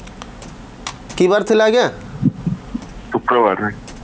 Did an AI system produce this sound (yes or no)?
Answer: no